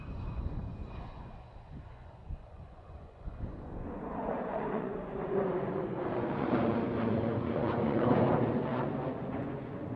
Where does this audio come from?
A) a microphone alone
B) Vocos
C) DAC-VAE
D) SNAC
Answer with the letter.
B